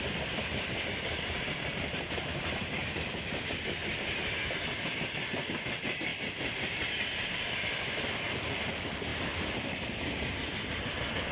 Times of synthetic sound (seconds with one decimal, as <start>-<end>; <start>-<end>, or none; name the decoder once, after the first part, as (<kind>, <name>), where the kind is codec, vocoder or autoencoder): 0.0-6.1 (vocoder, BigVGAN v2); 7.3-11.3